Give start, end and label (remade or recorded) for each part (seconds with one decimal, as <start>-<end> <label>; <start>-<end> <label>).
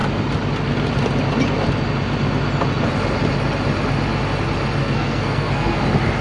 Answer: 0.0-4.8 recorded; 4.8-5.8 remade; 5.8-6.2 recorded